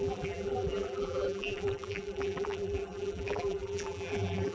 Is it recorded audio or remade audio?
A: remade